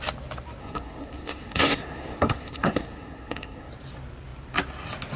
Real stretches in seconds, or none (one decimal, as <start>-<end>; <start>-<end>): 0.0-0.6; 3.7-5.2